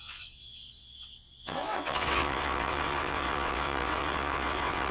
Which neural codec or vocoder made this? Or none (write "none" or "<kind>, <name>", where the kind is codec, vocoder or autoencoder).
vocoder, WaveNeXt